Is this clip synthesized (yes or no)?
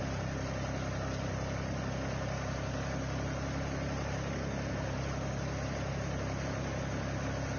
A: no